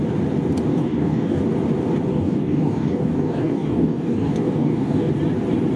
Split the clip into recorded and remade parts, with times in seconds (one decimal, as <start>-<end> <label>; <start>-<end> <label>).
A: 0.0-0.7 recorded; 0.7-1.4 remade; 1.4-2.1 recorded; 2.1-5.1 remade; 5.1-5.8 recorded